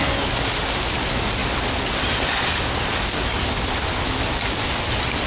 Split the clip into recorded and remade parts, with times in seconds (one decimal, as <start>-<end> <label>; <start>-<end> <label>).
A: 0.0-5.3 recorded

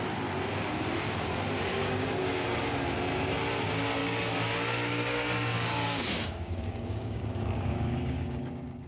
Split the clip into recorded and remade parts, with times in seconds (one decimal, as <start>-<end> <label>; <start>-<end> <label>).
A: 0.0-1.7 recorded; 1.7-2.6 remade; 2.6-4.0 recorded; 4.0-8.9 remade

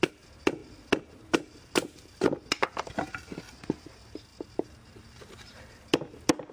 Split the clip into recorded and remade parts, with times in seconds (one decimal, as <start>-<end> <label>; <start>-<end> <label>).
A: 0.0-6.5 recorded

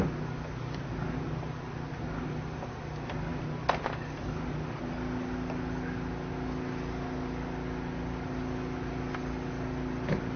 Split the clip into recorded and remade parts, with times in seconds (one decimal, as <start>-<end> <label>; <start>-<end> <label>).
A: 0.0-10.4 recorded